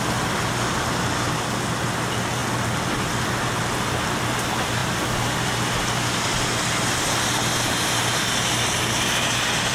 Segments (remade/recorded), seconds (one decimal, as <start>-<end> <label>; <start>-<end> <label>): 0.0-9.7 recorded